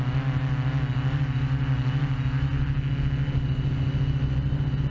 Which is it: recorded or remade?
recorded